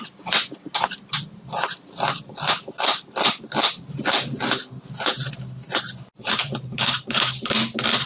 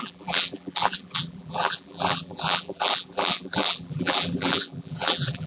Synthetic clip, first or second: second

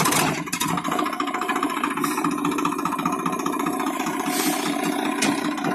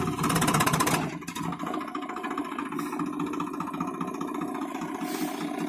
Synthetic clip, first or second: first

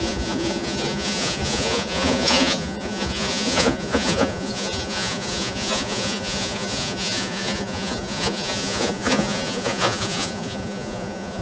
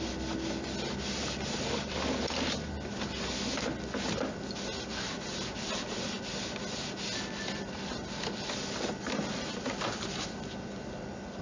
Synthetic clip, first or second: first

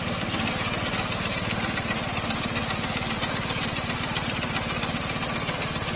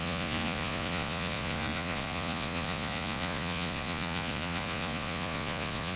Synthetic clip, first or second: second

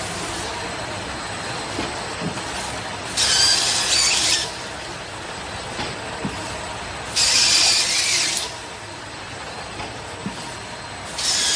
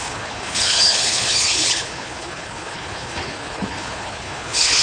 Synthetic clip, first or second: second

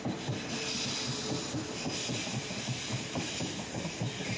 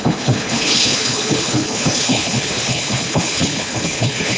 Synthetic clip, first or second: second